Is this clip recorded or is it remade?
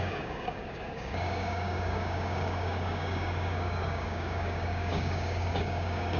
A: remade